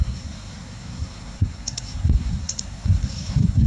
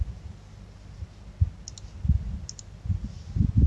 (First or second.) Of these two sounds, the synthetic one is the first